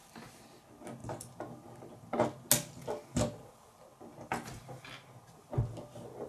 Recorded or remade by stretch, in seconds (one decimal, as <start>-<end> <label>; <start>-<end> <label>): 0.0-0.6 remade; 0.6-6.3 recorded

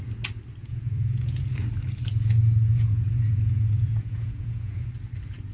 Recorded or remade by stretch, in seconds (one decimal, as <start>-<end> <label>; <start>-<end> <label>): 0.0-0.6 recorded; 0.6-1.4 remade; 1.4-2.7 recorded; 2.7-4.8 remade; 4.8-5.5 recorded